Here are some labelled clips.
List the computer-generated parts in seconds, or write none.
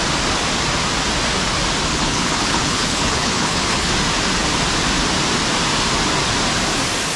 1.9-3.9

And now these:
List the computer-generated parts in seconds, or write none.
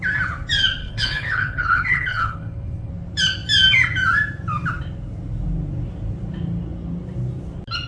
0.8-2.9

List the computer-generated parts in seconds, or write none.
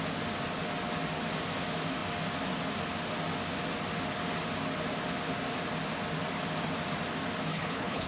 7.5-8.1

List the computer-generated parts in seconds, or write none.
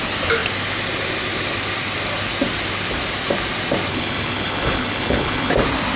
3.9-5.5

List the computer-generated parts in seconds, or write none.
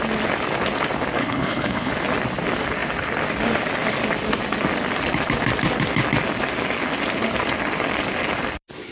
1.2-1.9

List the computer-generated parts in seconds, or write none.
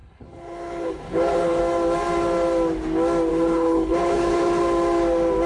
0.0-1.6; 3.3-4.6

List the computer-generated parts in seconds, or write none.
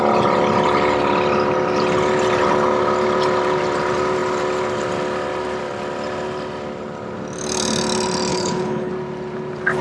8.3-8.9